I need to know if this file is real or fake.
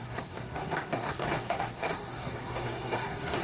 fake